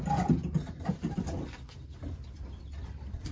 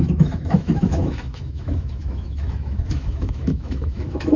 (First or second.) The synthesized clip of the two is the second